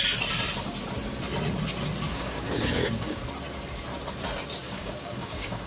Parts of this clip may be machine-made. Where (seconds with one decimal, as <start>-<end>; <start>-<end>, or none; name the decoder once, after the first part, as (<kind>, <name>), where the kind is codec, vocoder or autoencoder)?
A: 2.1-3.2 (codec, DAC); 4.6-5.7

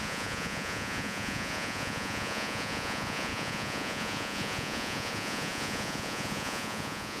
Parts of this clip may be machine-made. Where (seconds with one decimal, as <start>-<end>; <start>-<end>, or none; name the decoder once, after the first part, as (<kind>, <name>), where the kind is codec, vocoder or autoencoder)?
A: 0.0-7.2 (vocoder, Vocos)

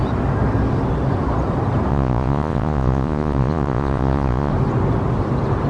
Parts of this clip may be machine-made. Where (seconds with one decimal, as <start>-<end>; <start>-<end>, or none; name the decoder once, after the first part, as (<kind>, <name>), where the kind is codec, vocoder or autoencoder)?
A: 1.9-4.5 (vocoder, Vocos)

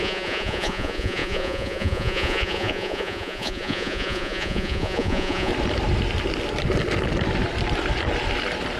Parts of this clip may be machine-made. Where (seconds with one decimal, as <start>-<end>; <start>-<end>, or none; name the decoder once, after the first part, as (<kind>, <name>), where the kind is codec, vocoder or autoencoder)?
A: 0.0-5.5 (vocoder, Vocos)